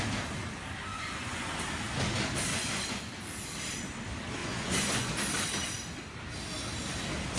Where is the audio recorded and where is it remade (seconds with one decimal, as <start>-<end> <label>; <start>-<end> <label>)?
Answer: 0.0-0.9 recorded; 0.9-1.5 remade; 1.5-2.5 recorded; 2.5-3.1 remade; 3.1-4.4 recorded; 4.4-5.1 remade; 5.1-7.4 recorded